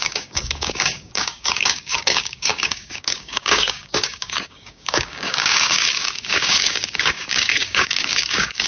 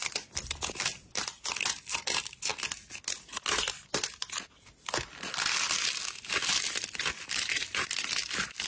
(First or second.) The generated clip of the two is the first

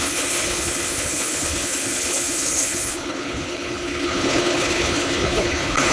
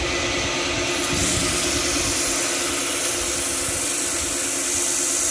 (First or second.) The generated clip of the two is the first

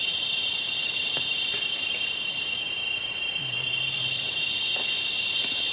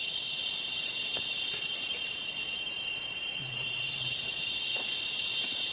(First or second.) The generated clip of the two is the second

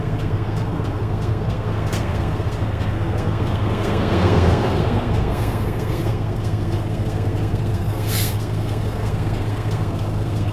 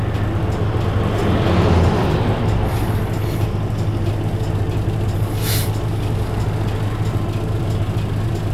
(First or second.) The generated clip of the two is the first